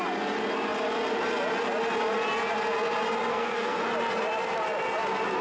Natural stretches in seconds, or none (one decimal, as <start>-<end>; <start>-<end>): 0.0-3.3; 3.8-5.4